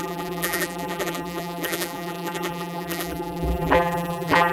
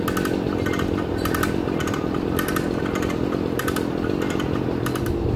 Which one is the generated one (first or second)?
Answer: first